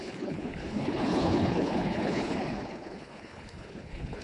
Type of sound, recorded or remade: remade